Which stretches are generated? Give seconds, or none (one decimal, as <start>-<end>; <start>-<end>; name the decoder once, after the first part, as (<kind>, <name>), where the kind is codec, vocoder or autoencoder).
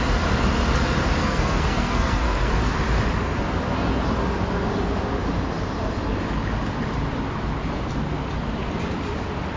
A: 1.2-2.5 (codec, SNAC)